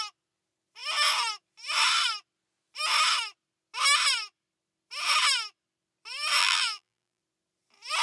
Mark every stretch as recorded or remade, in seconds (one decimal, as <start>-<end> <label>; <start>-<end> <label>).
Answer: 0.0-6.4 recorded; 6.4-7.2 remade; 7.2-8.0 recorded